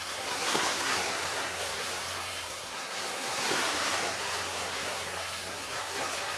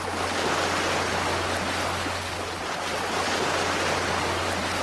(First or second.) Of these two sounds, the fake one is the first